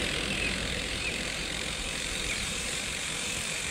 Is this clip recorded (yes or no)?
no